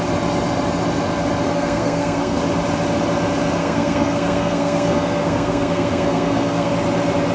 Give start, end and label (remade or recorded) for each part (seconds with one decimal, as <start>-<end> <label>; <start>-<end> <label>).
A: 0.0-1.5 recorded; 1.5-2.4 remade; 2.4-3.6 recorded; 3.6-6.7 remade; 6.7-7.3 recorded